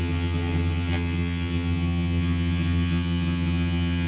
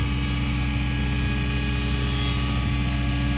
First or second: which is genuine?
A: second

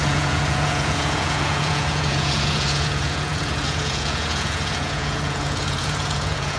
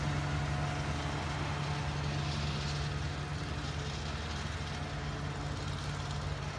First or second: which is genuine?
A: second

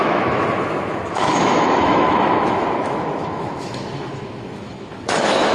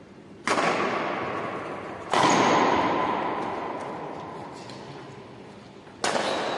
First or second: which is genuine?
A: second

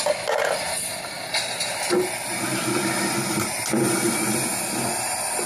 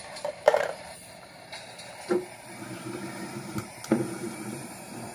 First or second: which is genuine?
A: first